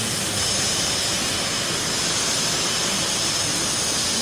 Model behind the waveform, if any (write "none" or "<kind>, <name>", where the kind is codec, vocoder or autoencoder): none